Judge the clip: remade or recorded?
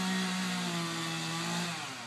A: recorded